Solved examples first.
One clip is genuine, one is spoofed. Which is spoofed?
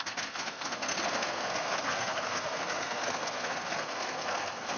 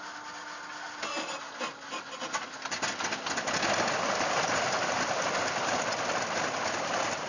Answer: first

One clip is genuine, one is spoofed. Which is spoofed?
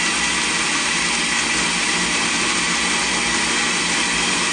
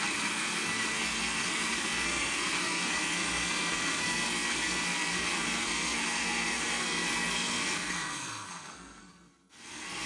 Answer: second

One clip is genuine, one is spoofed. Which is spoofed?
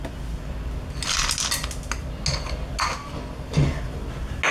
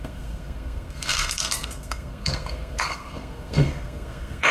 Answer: second